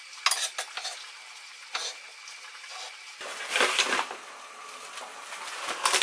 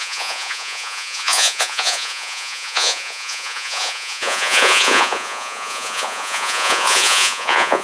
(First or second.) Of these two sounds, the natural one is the first